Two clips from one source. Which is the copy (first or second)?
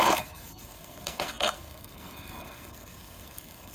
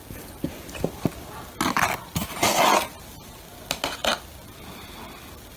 first